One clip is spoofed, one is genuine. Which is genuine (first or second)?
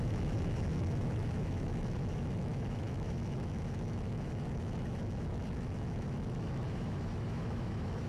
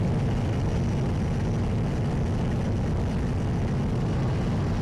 second